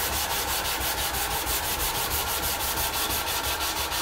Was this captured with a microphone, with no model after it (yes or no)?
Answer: yes